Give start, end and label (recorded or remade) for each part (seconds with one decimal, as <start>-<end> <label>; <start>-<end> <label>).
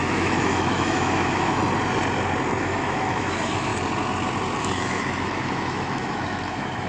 0.0-1.6 remade; 1.6-2.6 recorded; 2.6-3.7 remade; 3.7-4.6 recorded; 4.6-6.9 remade